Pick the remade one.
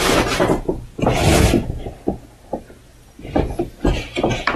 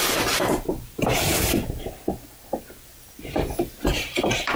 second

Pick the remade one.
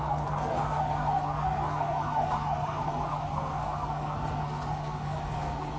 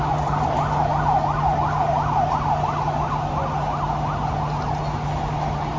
first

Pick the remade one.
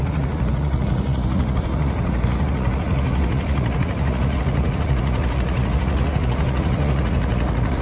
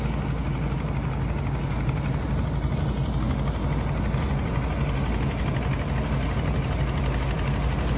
first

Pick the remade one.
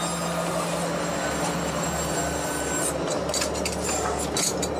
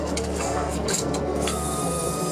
second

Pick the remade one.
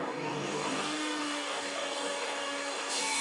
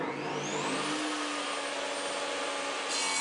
first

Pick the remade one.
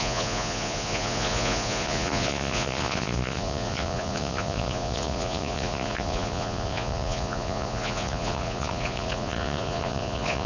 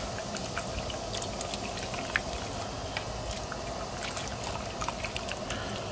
first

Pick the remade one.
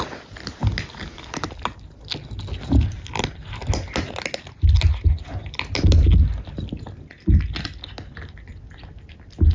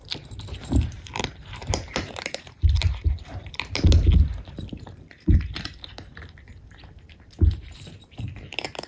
second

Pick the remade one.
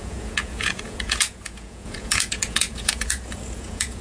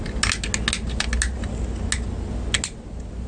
first